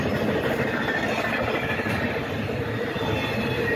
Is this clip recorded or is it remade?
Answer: recorded